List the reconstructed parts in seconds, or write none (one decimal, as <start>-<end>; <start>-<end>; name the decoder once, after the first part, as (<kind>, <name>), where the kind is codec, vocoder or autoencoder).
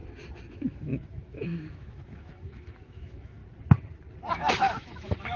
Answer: 0.5-3.4 (autoencoder, DAC-VAE); 4.3-5.4